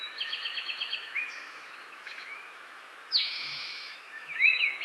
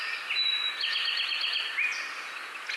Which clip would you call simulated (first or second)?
first